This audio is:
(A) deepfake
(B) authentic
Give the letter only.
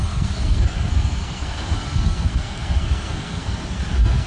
A